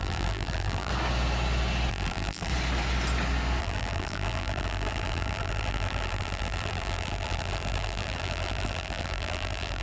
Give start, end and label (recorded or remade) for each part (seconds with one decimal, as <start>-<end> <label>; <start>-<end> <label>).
0.0-0.9 remade; 0.9-1.9 recorded; 1.9-2.5 remade; 2.5-3.6 recorded; 3.6-9.8 remade